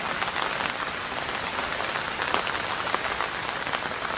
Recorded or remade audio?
recorded